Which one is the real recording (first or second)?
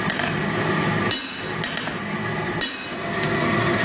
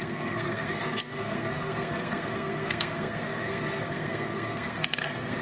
first